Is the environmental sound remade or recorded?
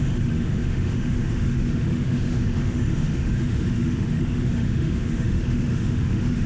remade